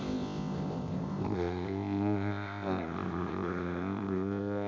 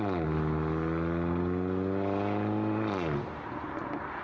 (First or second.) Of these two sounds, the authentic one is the second